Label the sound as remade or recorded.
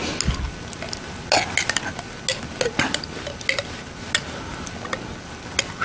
recorded